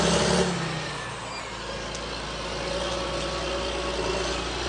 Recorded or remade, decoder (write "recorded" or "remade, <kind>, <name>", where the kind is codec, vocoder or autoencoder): recorded